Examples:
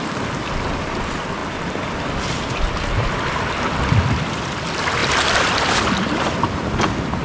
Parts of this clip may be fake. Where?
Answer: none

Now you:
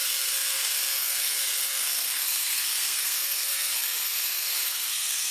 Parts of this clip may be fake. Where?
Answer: 0.0-5.3 (codec, SNAC)